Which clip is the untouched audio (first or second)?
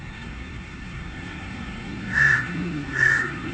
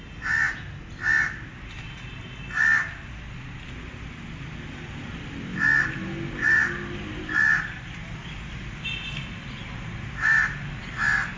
second